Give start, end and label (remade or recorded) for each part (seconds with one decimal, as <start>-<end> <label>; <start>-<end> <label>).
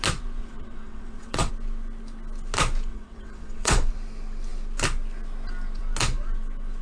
0.0-0.4 recorded; 0.4-1.5 remade; 1.5-2.9 recorded; 2.9-3.9 remade; 3.9-6.8 recorded